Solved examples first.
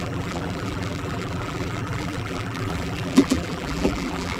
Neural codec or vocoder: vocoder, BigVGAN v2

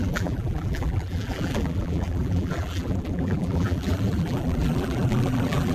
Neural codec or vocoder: vocoder, BigVGAN v2